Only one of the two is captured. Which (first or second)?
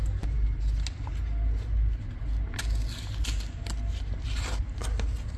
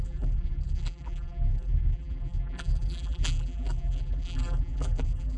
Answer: first